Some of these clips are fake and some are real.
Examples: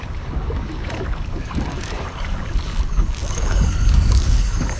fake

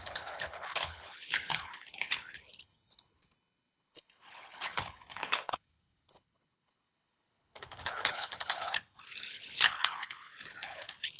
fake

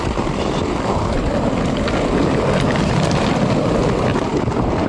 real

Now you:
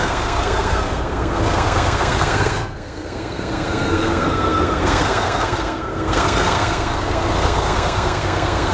fake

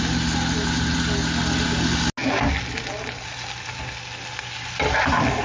real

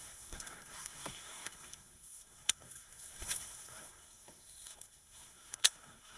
fake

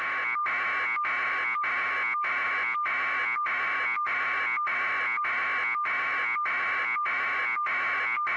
real